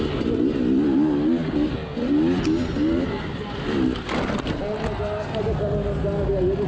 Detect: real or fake real